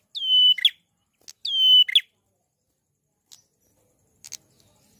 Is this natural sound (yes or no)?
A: yes